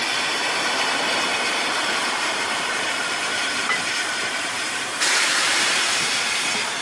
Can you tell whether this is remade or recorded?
remade